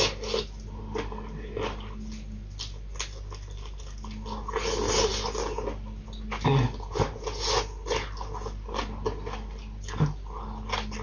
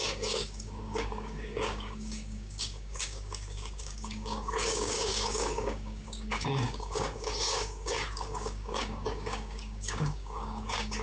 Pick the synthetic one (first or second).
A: second